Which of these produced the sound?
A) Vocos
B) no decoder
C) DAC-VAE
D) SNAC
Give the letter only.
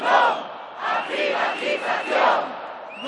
B